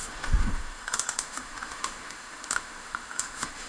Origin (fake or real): fake